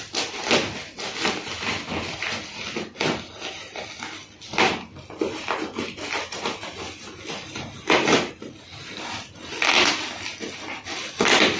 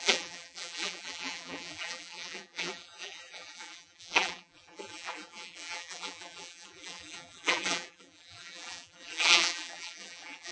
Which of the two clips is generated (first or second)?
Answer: second